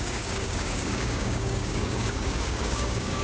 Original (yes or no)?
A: no